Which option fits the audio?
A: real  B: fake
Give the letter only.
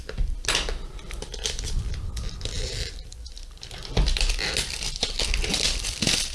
B